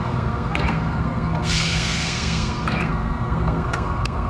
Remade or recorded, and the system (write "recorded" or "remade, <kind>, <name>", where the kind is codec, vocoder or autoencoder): remade, codec, SNAC